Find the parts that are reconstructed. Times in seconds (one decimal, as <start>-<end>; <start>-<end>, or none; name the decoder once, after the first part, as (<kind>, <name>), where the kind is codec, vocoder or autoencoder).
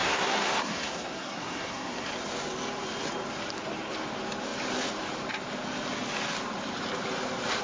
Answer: 0.0-2.1 (codec, SNAC)